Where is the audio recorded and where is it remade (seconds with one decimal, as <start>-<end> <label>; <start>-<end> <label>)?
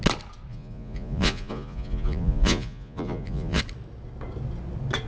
0.0-0.5 recorded; 0.5-3.6 remade; 3.6-5.1 recorded